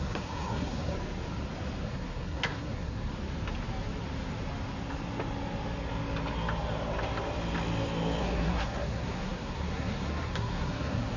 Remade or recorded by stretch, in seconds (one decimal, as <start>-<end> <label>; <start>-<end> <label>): 0.0-0.9 remade; 0.9-1.8 recorded; 1.8-3.1 remade; 3.1-8.2 recorded; 8.2-11.2 remade